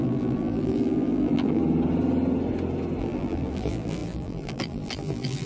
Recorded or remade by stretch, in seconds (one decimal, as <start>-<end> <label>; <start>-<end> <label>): 0.0-1.6 remade; 1.6-3.0 recorded; 3.0-5.5 remade